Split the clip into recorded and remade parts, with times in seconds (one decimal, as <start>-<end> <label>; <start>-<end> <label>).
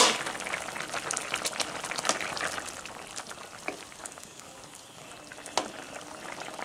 0.0-4.0 recorded; 4.0-5.1 remade; 5.1-6.6 recorded